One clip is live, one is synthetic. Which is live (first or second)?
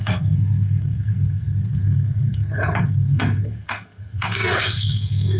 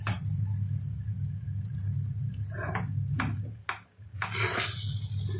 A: second